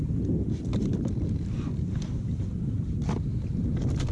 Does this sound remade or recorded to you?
recorded